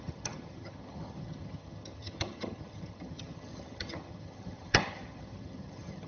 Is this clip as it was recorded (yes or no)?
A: no